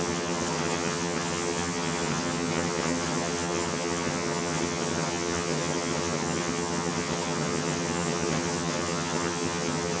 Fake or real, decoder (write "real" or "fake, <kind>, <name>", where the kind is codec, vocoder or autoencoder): fake, vocoder, HiFi-GAN